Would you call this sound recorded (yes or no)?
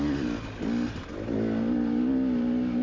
yes